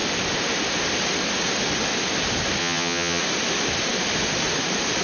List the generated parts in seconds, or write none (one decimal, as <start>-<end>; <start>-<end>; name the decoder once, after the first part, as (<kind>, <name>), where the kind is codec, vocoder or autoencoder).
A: 2.6-3.2 (vocoder, HiFi-GAN)